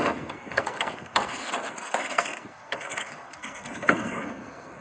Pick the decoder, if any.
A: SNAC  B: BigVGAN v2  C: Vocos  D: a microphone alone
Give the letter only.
A